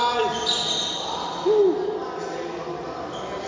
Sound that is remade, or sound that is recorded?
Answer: recorded